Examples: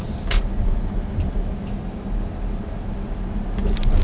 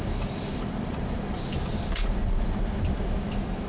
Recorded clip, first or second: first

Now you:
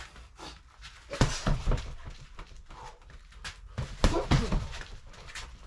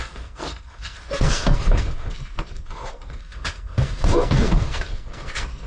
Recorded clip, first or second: first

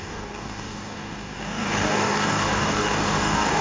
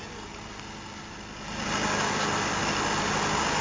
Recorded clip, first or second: second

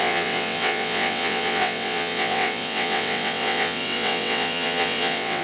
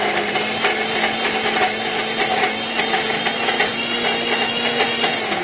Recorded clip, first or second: second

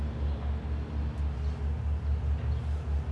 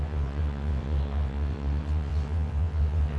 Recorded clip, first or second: first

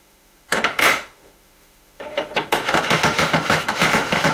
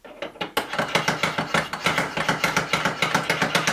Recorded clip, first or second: second